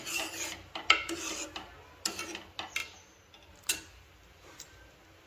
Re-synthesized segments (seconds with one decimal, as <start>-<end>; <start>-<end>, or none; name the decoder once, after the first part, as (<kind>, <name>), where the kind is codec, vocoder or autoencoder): none

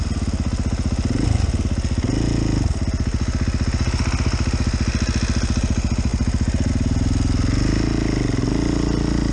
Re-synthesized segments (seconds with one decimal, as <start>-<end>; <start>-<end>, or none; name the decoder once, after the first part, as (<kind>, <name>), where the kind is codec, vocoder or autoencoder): none

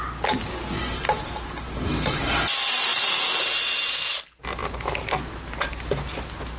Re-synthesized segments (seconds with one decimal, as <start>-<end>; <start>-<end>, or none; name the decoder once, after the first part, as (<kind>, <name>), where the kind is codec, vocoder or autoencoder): none

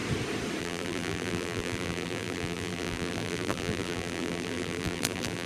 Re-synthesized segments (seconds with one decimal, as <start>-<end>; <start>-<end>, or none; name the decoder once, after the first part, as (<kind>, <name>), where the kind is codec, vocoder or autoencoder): 0.6-5.5 (vocoder, BigVGAN v2)

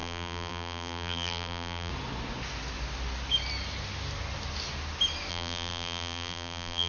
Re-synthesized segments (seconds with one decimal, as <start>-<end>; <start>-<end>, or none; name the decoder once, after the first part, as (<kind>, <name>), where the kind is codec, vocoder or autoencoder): 0.0-1.9 (vocoder, BigVGAN v2); 5.3-6.9

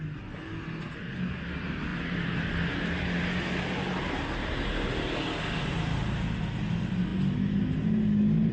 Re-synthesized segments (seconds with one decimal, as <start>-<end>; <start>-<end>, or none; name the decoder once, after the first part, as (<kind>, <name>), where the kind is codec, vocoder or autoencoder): none